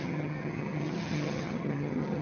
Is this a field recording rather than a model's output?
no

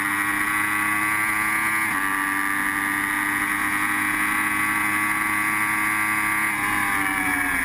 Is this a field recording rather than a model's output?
yes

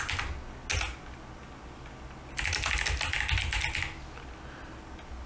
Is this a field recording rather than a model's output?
yes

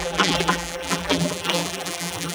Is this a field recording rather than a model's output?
no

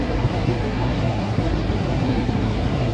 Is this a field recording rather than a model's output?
no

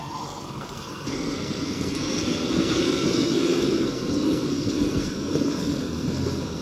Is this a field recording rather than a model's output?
no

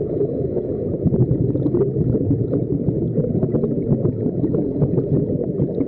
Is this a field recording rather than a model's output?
yes